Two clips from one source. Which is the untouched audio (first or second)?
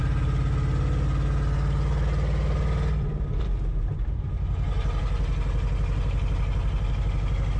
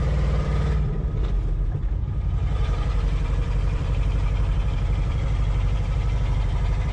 first